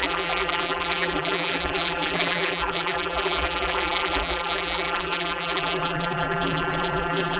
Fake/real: fake